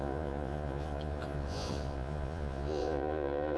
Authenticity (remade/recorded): remade